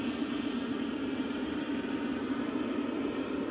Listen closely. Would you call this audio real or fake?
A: fake